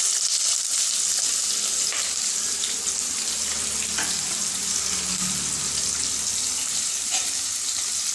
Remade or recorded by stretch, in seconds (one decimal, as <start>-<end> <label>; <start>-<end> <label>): 0.0-8.1 recorded